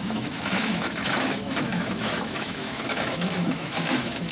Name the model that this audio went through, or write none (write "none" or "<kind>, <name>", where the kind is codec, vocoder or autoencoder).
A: autoencoder, DAC-VAE